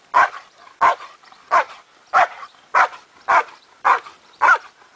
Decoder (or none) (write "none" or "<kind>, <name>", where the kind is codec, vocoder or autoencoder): none